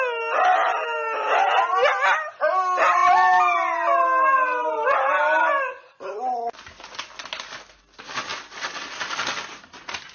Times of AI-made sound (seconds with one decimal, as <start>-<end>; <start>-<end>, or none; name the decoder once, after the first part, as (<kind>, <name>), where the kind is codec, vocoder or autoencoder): none